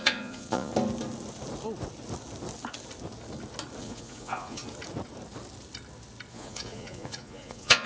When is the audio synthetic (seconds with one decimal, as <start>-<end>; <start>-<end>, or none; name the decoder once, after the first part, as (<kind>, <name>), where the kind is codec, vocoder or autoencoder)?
0.0-0.7 (vocoder, Vocos); 3.8-4.6; 6.3-7.9